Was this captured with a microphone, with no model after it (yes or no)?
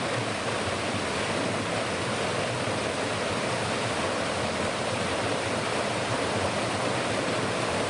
yes